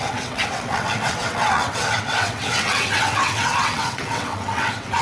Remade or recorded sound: remade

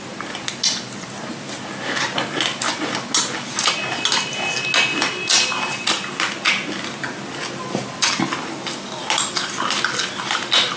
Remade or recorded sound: recorded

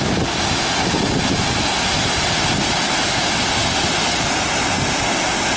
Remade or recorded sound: recorded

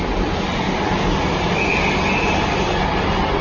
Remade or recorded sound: recorded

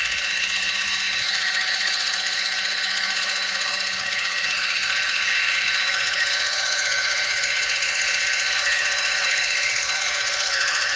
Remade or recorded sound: remade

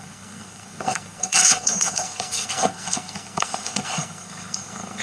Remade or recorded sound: remade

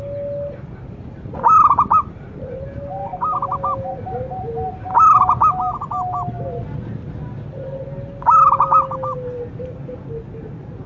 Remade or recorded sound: recorded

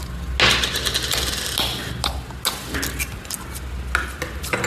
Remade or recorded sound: recorded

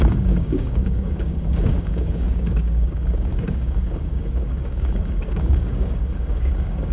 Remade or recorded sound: remade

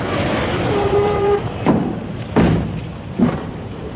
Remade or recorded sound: remade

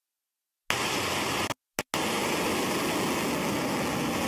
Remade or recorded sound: recorded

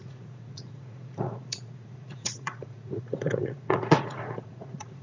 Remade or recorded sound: remade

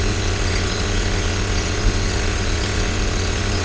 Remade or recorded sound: remade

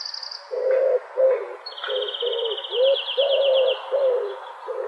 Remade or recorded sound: recorded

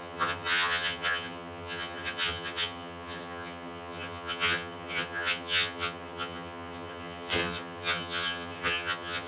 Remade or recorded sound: remade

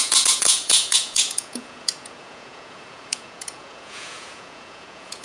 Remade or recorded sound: remade